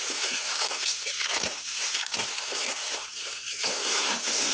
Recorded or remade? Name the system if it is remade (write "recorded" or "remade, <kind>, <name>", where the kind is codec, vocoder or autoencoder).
remade, codec, SNAC